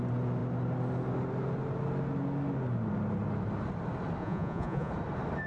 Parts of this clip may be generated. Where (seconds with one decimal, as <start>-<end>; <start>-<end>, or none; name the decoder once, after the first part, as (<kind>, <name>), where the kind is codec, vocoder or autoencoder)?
4.2-4.9 (vocoder, Vocos)